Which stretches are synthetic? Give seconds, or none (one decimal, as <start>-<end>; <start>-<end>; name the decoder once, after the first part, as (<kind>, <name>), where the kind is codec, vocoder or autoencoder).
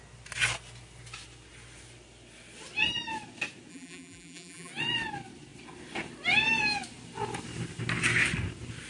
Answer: 3.7-4.7 (vocoder, BigVGAN v2)